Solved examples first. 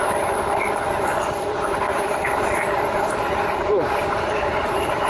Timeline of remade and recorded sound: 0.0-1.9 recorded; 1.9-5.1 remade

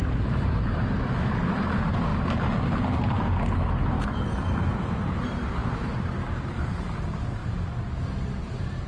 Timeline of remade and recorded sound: 0.0-2.1 remade; 2.1-3.9 recorded; 3.9-7.4 remade; 7.4-8.4 recorded; 8.4-8.9 remade

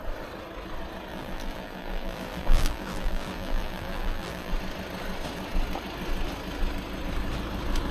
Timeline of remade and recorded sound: 0.0-1.1 recorded; 1.1-4.5 remade; 4.5-7.9 recorded

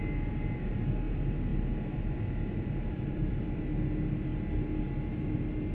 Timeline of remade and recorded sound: 0.0-1.5 recorded; 1.5-3.6 remade; 3.6-5.7 recorded

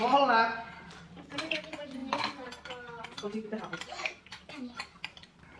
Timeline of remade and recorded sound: 0.0-5.6 recorded

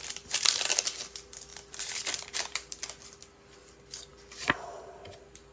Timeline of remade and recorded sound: 0.0-1.5 recorded; 1.5-2.8 remade; 2.8-5.5 recorded